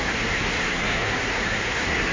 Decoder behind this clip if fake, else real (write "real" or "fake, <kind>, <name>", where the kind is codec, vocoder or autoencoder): fake, codec, SNAC